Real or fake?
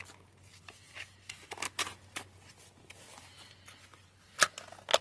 real